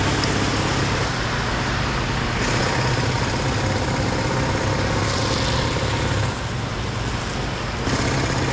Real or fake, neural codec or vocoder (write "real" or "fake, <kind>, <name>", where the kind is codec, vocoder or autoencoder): real